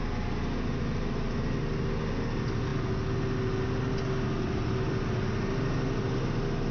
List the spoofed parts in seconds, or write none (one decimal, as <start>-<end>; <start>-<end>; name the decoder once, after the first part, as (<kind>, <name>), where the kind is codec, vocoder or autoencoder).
none